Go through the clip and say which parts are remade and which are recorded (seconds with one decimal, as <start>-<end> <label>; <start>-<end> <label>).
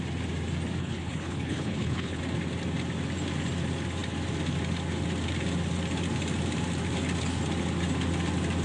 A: 0.0-0.8 recorded; 0.8-2.2 remade; 2.2-8.6 recorded